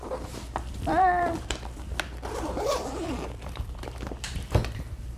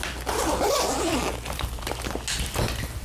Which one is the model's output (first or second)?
first